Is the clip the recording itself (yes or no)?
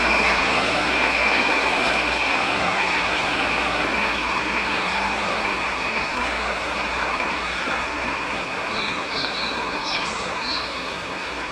no